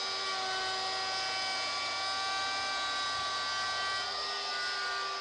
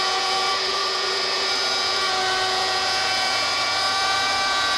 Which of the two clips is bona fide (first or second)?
first